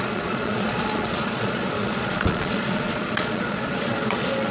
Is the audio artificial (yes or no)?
yes